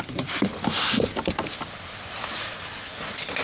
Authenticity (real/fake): real